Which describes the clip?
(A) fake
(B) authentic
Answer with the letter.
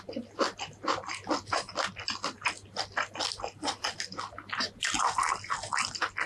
B